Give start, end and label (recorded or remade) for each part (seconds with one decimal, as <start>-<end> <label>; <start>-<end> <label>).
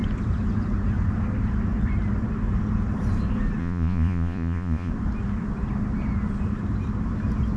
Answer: 0.0-3.6 recorded; 3.6-4.9 remade; 4.9-7.6 recorded